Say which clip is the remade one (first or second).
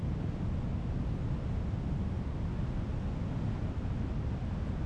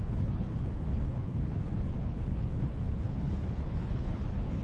second